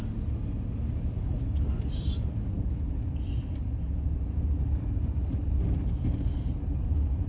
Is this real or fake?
real